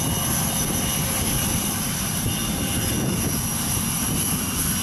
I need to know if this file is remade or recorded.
recorded